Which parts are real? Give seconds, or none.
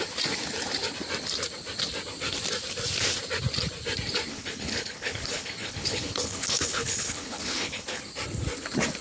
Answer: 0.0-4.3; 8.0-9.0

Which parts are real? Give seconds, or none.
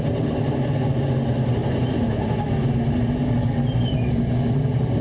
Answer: 0.0-5.0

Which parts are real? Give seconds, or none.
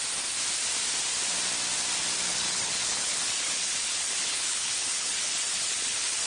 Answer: 0.0-2.3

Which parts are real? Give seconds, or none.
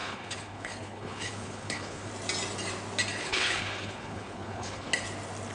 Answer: 2.1-3.2; 4.9-5.5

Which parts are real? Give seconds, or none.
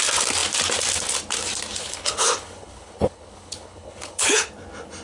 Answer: 0.0-1.8; 4.5-5.0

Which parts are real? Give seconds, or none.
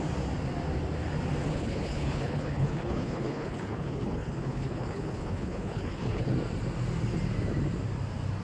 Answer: 0.0-1.5; 6.3-8.4